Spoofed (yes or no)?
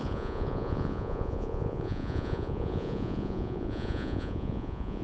yes